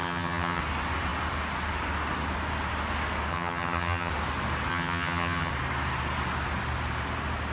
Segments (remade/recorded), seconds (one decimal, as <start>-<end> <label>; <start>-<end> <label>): 0.0-0.6 remade; 0.6-3.3 recorded; 3.3-4.1 remade; 4.1-4.7 recorded; 4.7-5.5 remade; 5.5-7.5 recorded